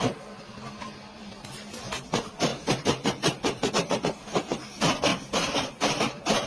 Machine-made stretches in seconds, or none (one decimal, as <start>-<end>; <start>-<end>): 5.1-6.0